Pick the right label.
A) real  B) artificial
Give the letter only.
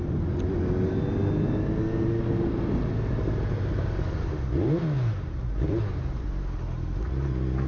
A